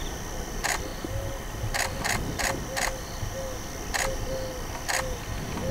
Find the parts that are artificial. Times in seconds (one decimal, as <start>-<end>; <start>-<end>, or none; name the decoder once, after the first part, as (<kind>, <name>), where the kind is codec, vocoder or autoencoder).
none